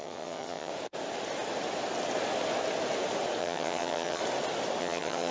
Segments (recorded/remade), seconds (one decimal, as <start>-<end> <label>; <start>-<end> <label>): 0.0-0.7 remade; 0.7-3.4 recorded; 3.4-4.2 remade; 4.2-4.8 recorded; 4.8-5.3 remade